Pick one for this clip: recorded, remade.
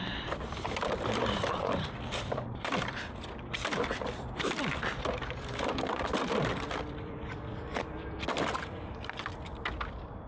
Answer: remade